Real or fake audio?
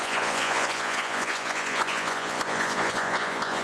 fake